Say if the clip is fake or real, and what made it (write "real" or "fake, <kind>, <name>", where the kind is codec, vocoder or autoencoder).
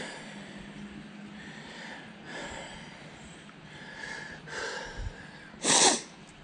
real